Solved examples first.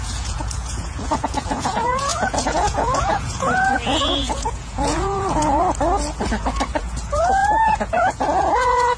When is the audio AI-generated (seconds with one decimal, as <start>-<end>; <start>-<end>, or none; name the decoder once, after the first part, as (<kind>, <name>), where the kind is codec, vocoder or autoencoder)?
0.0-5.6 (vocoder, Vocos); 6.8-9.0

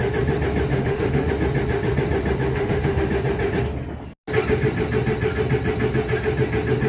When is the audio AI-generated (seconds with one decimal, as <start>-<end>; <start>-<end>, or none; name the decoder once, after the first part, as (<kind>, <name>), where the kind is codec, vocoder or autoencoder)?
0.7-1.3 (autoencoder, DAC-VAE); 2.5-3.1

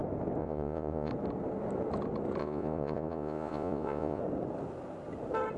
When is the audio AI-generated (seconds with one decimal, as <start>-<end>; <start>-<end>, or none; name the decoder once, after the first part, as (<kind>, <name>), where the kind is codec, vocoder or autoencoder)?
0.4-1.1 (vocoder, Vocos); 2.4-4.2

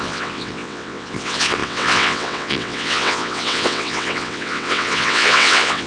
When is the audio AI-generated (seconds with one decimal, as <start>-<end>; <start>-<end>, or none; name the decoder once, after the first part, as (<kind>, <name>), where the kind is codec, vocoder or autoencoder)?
0.0-5.9 (vocoder, WaveNeXt)

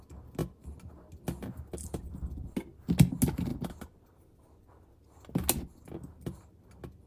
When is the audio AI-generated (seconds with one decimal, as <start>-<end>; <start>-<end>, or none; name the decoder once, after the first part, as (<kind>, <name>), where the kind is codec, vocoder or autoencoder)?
none

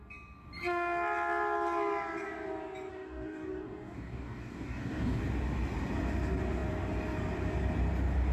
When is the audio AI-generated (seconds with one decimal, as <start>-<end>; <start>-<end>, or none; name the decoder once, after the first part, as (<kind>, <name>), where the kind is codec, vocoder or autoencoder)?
2.9-5.2 (codec, DAC)